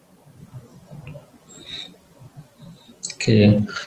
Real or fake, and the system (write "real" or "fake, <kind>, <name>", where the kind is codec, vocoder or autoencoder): real